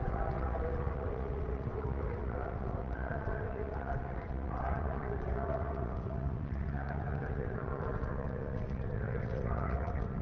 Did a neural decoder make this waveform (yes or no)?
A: yes